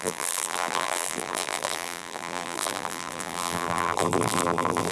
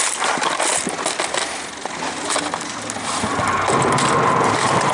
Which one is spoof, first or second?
first